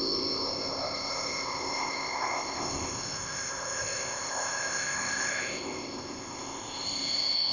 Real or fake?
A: fake